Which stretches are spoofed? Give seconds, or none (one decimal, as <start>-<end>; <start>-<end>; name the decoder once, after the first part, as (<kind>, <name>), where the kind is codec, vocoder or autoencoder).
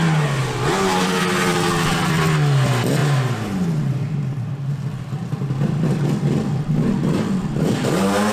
none